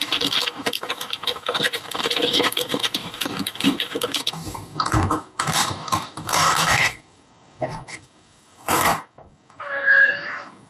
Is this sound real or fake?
fake